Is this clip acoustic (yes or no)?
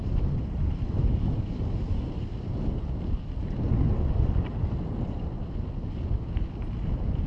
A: yes